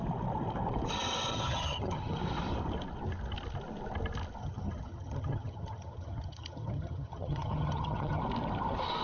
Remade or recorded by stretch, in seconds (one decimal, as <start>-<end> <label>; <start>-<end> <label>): 0.0-1.3 recorded; 1.3-2.2 remade; 2.2-4.4 recorded; 4.4-8.2 remade; 8.2-9.0 recorded